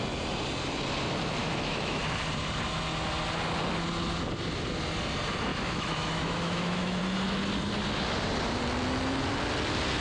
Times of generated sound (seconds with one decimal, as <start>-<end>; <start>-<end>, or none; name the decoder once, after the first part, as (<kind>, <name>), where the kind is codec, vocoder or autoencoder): 1.4-2.0 (autoencoder, DAC-VAE); 5.5-7.0